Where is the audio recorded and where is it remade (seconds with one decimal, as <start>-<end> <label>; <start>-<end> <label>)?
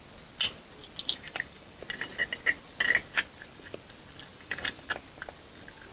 0.0-1.0 recorded; 1.0-1.8 remade; 1.8-4.3 recorded; 4.3-4.9 remade; 4.9-5.9 recorded